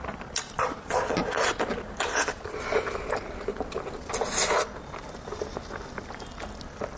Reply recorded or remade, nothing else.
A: recorded